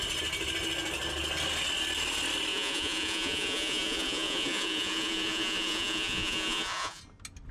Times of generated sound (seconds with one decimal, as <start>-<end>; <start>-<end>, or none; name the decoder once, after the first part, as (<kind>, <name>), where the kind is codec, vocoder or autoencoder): 2.5-7.0 (vocoder, Vocos)